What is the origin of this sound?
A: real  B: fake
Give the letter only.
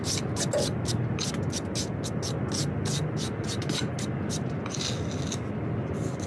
A